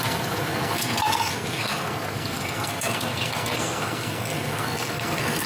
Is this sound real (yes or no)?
no